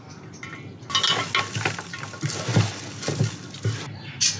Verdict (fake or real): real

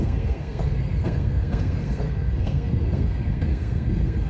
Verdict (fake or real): fake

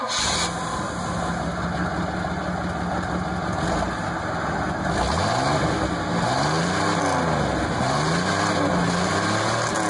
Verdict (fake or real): real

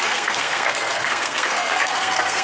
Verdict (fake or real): fake